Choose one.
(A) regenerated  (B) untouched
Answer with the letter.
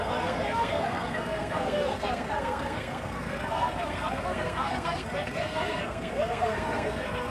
A